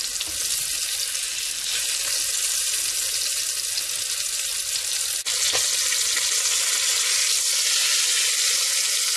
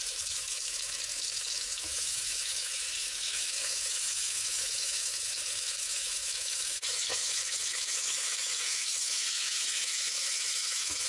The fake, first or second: second